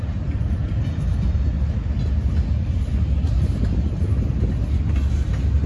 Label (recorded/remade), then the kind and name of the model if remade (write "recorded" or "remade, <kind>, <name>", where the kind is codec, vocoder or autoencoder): recorded